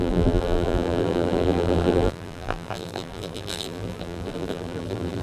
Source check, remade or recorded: remade